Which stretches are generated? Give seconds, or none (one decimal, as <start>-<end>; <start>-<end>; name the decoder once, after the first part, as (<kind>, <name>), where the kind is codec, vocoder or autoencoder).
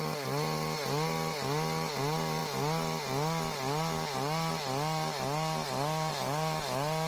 none